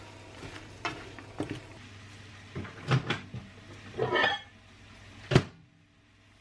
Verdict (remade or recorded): recorded